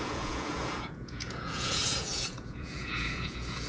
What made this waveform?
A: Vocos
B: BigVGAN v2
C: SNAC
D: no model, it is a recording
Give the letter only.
A